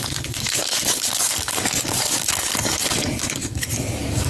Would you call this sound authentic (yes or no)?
no